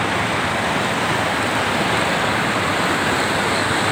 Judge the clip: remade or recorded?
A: recorded